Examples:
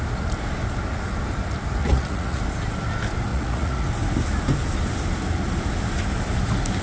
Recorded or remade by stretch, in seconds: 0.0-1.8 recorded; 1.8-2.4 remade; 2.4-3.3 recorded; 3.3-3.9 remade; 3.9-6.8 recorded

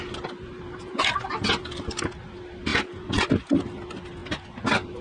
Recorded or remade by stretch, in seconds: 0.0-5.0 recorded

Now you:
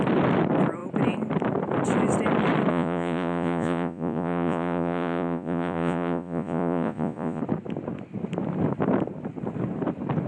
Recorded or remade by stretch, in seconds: 0.0-2.7 recorded; 2.7-7.4 remade; 7.4-10.3 recorded

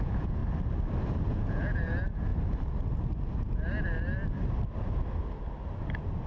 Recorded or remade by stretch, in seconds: 0.0-0.4 remade; 0.4-1.3 recorded; 1.3-2.3 remade; 2.3-6.3 recorded